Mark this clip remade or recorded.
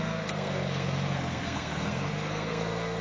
remade